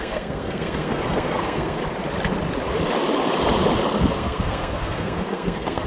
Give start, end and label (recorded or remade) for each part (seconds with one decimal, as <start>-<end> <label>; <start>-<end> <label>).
0.0-1.8 remade; 1.8-4.1 recorded; 4.1-5.9 remade